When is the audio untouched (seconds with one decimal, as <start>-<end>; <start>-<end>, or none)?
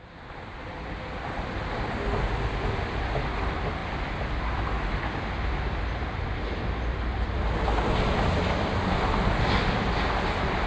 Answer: 0.0-10.7